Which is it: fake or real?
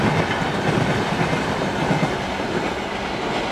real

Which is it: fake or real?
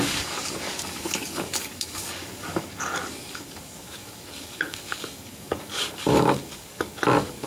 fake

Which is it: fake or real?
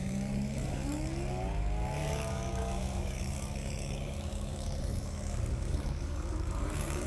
fake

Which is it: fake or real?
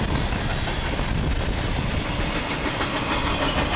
real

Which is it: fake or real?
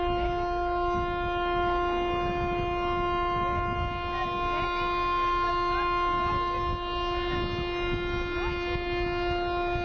real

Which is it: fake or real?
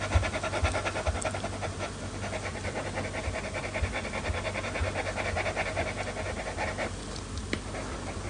real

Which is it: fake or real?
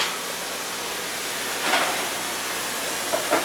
real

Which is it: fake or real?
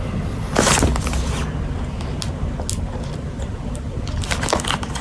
real